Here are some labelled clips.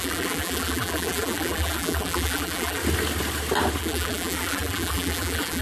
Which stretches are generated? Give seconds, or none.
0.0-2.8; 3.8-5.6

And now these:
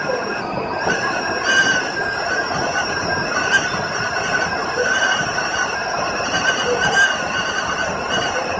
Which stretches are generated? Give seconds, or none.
4.6-5.9

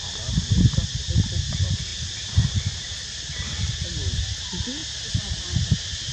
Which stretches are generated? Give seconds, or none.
1.9-2.5; 4.8-5.3